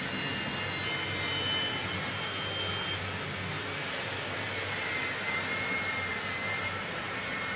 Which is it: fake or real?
real